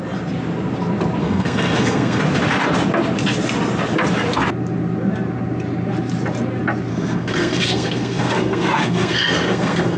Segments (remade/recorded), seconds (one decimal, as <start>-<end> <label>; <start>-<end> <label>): 0.0-1.2 recorded; 1.2-2.2 remade; 2.2-6.9 recorded; 6.9-10.0 remade